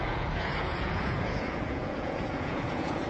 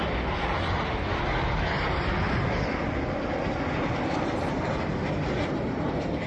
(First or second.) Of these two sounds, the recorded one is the second